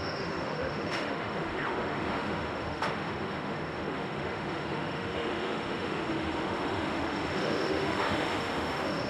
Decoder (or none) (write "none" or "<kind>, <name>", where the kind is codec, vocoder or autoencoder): autoencoder, DAC-VAE